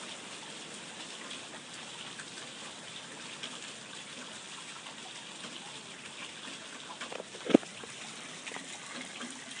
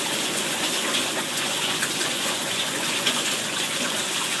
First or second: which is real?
first